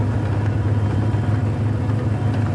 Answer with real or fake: real